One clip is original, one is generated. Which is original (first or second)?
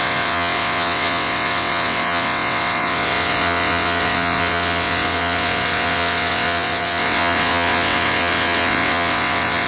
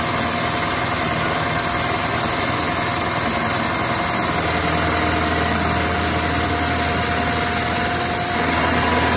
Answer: second